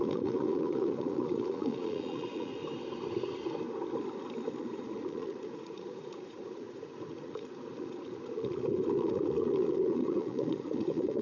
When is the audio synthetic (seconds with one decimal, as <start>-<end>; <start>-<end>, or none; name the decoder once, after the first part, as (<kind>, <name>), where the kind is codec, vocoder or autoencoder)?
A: 0.0-2.6 (vocoder, Vocos); 4.6-11.2